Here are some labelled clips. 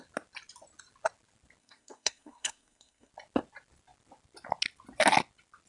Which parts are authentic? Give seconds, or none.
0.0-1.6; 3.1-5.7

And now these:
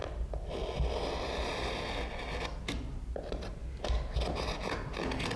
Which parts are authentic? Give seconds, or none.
0.0-5.4